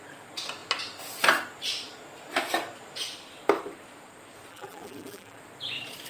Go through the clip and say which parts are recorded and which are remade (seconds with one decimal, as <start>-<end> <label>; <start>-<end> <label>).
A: 0.0-4.5 recorded; 4.5-5.4 remade; 5.4-6.1 recorded